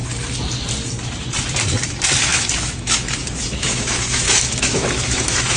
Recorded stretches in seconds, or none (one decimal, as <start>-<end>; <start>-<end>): 0.0-2.3